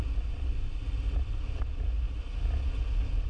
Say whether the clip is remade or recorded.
recorded